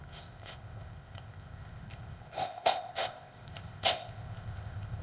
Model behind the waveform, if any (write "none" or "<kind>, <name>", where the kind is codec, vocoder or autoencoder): codec, ZipCodec